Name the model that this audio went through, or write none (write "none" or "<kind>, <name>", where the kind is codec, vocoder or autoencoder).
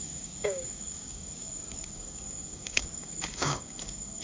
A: codec, DAC